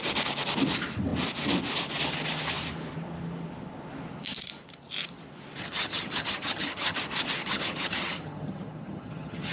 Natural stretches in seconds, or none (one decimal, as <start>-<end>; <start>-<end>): 0.0-5.6; 7.0-7.4